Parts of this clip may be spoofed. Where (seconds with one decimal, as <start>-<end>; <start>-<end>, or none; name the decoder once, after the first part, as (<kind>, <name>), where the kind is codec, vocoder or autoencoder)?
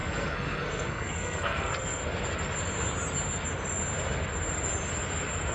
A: 0.0-2.0 (codec, SNAC)